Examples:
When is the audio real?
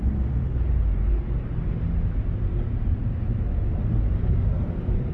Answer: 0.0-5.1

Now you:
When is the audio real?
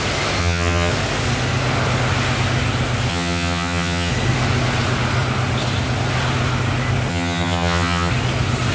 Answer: 0.0-0.4; 0.9-3.1; 4.1-7.1; 8.1-8.7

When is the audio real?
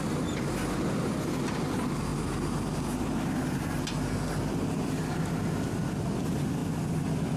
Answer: 0.0-7.4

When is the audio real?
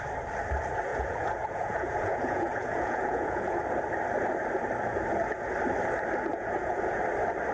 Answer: 0.0-0.9; 3.6-6.3; 7.0-7.5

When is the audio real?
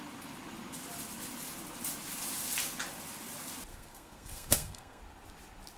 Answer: 0.0-3.7; 5.0-5.8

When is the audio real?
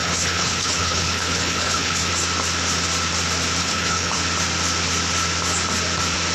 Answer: 2.1-3.6; 4.2-6.3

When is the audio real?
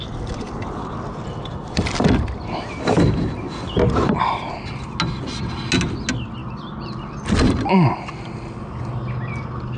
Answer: 0.0-9.8